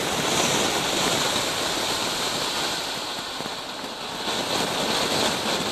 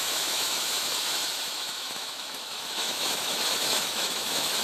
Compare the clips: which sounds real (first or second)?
first